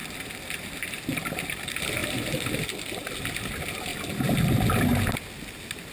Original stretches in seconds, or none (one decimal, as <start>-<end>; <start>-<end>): 0.8-2.0; 3.2-3.9; 4.8-5.9